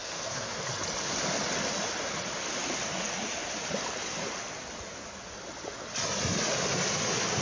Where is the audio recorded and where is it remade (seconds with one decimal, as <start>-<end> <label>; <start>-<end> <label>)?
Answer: 0.0-0.7 remade; 0.7-7.4 recorded